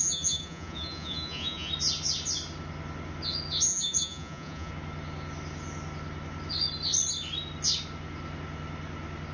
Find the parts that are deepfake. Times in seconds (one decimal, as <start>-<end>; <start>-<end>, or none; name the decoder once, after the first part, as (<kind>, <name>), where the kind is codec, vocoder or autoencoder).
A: 0.0-1.7 (vocoder, Vocos); 3.7-4.7